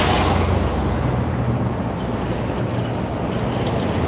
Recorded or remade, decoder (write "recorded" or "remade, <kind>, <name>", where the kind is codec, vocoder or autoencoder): recorded